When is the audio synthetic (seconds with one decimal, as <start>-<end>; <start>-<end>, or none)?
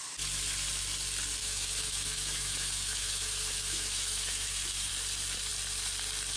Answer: 1.4-4.9